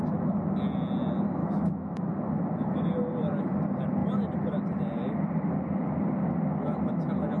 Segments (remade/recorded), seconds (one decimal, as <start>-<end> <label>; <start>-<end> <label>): 0.0-1.4 recorded; 1.4-2.1 remade; 2.1-7.4 recorded

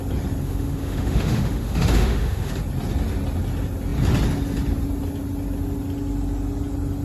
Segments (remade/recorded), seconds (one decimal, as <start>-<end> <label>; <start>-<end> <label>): 0.0-0.4 recorded; 0.4-2.5 remade; 2.5-7.0 recorded